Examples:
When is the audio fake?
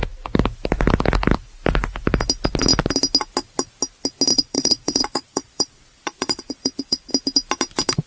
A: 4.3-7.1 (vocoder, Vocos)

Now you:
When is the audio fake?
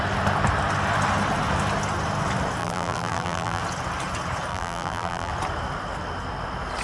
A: 2.6-3.6 (vocoder, BigVGAN v2); 4.5-5.3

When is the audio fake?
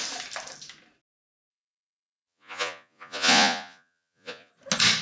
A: 1.5-4.5 (vocoder, Vocos)